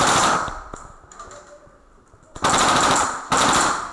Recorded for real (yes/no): no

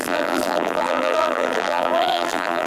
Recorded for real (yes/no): no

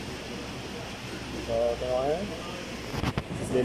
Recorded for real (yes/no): yes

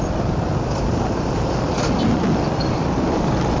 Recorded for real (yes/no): no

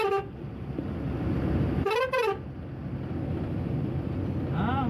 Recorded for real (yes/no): yes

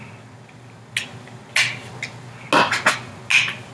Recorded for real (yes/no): yes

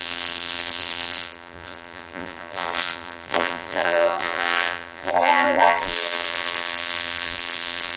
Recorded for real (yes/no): no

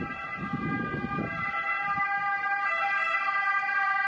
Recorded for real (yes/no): yes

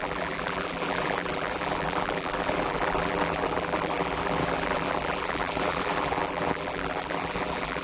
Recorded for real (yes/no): no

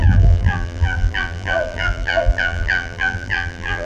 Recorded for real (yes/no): no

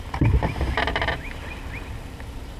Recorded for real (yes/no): no